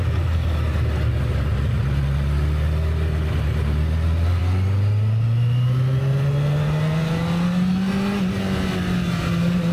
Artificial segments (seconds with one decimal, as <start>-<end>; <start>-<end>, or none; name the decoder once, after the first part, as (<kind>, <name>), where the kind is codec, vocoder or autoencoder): none